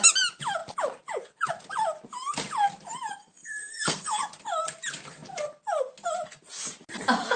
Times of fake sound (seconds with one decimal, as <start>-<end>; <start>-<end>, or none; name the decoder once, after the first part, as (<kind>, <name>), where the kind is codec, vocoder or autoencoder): 3.2-4.2 (codec, SNAC)